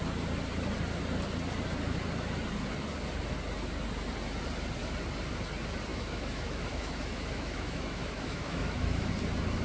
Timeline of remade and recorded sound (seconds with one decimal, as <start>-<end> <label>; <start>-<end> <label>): 0.0-5.9 recorded; 5.9-9.1 remade; 9.1-9.6 recorded